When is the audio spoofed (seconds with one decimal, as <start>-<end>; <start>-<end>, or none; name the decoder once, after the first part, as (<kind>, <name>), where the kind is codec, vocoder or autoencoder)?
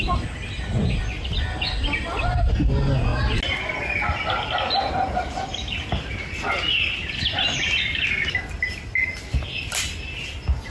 none